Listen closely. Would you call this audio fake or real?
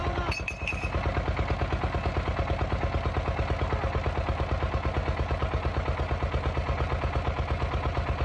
real